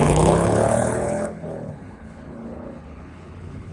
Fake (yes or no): yes